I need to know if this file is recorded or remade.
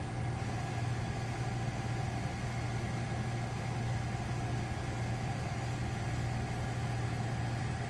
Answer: recorded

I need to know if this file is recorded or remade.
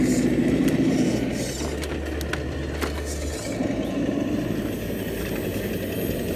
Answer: recorded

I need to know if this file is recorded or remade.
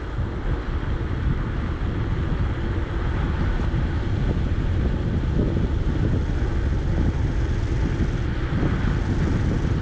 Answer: recorded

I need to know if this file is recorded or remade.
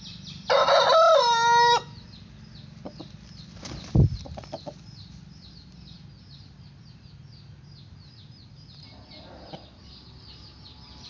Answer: recorded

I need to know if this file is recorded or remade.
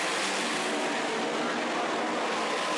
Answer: recorded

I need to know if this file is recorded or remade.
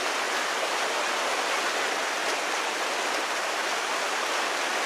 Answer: recorded